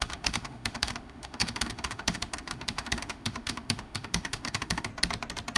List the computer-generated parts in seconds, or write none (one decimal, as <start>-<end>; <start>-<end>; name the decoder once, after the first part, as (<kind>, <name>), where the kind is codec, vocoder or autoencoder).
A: 0.0-4.9 (autoencoder, DAC-VAE)